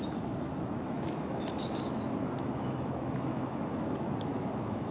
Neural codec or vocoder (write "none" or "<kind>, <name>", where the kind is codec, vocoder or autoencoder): autoencoder, DAC-VAE